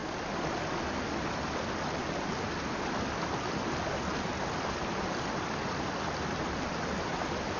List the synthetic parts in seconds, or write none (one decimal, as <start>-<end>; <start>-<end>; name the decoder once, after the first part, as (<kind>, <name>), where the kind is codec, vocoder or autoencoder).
none